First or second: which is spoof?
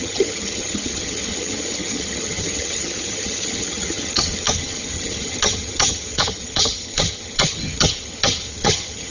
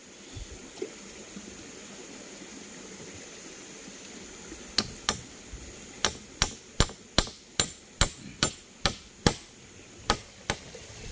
first